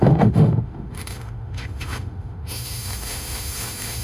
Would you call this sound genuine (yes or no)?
no